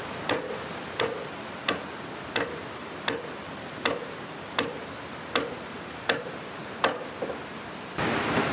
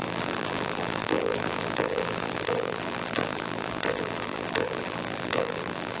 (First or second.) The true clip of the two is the first